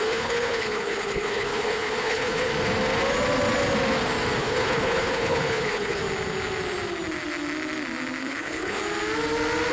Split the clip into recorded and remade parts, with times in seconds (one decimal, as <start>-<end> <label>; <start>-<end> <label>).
0.0-2.5 remade; 2.5-4.4 recorded; 4.4-6.0 remade; 6.0-8.2 recorded; 8.2-8.8 remade; 8.8-9.7 recorded